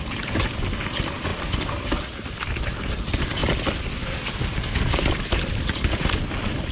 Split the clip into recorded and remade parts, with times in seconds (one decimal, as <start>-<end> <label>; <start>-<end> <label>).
0.0-6.7 recorded